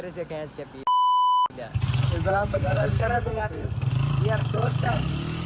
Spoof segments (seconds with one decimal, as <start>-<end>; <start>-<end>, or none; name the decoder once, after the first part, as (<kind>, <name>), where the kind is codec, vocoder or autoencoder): 2.3-3.9 (codec, SNAC); 4.4-5.1